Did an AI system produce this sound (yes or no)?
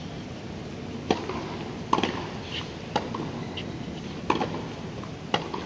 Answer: no